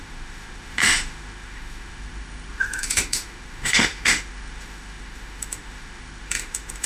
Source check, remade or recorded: remade